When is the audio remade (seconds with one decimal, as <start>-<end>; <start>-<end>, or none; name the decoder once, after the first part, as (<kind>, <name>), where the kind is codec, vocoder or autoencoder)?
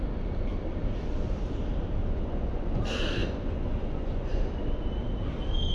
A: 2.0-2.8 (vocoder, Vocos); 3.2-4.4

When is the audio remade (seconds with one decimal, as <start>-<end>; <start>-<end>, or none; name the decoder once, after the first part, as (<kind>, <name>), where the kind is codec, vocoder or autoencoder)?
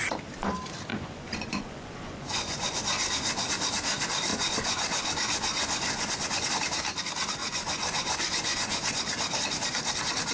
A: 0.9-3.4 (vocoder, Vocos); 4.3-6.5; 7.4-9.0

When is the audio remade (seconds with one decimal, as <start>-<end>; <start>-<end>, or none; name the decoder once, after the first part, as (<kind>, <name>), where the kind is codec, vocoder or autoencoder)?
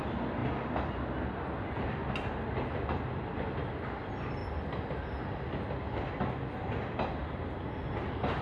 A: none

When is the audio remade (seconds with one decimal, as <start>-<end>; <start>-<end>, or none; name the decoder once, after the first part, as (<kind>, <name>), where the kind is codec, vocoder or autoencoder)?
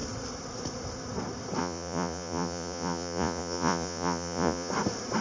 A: 1.6-4.7 (vocoder, Vocos)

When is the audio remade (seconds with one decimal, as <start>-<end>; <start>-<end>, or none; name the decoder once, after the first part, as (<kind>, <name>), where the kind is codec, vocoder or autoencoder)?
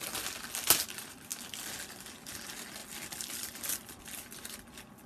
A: none